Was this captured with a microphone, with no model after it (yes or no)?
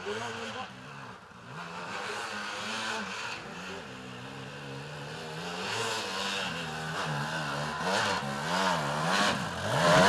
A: yes